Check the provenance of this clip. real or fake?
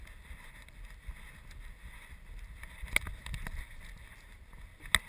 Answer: real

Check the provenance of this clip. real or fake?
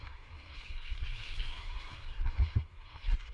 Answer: fake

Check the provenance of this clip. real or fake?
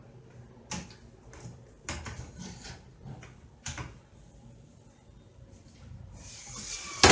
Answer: real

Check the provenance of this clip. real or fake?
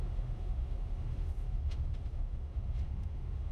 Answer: fake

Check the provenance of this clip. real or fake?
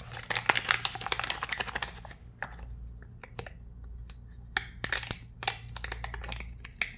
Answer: real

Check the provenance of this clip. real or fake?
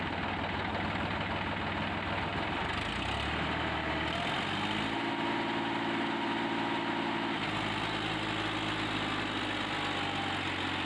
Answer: real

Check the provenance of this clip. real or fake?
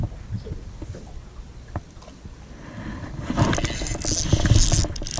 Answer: real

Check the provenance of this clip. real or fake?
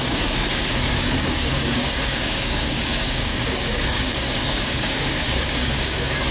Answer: fake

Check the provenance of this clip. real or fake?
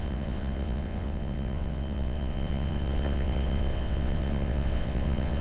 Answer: fake